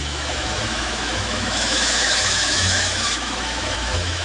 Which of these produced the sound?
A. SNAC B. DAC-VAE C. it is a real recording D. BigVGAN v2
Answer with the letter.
B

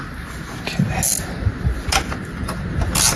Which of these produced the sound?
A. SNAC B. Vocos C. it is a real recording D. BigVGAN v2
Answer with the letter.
C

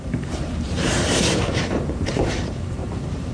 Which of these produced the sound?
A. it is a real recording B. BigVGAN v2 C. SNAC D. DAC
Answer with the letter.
B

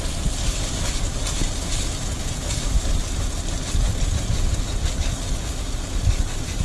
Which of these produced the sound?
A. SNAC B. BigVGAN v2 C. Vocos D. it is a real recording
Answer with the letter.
D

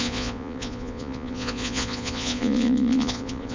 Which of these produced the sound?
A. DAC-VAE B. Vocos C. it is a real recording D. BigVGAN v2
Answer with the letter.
B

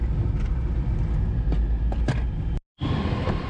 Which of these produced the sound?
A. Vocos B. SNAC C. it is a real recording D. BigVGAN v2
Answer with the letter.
C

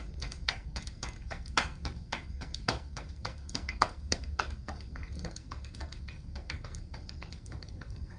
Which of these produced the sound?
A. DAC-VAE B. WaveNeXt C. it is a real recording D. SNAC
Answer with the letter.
D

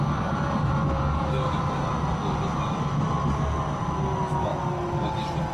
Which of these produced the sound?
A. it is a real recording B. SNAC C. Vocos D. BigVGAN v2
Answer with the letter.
A